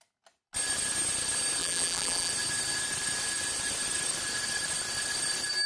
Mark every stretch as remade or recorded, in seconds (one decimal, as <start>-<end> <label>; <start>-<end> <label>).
0.0-1.6 recorded; 1.6-2.3 remade; 2.3-5.7 recorded